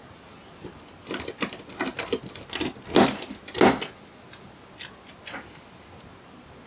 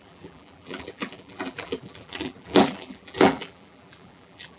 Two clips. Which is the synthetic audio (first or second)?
second